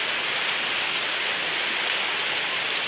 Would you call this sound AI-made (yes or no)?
no